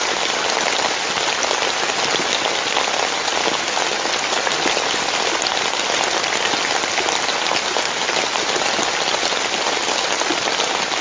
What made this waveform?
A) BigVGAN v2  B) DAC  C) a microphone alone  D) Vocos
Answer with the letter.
C